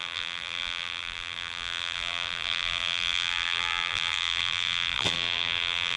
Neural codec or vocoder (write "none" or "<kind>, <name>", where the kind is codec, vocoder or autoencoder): vocoder, BigVGAN v2